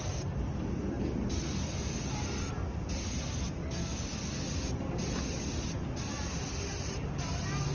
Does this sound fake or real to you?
real